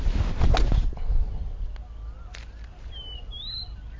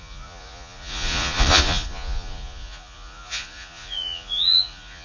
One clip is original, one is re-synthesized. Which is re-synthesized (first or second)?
second